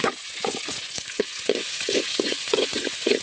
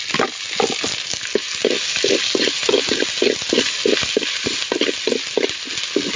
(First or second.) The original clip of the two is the second